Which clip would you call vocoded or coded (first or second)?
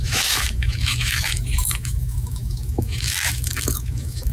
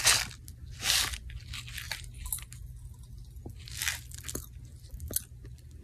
first